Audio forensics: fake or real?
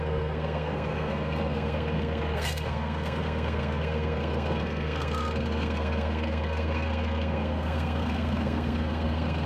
fake